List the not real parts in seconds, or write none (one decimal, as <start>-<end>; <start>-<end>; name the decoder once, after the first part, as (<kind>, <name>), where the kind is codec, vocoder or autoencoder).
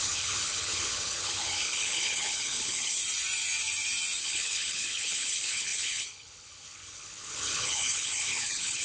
0.0-3.0 (codec, HILCodec); 4.2-8.8